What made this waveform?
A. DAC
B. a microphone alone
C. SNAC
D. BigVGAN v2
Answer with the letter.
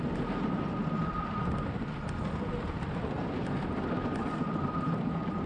B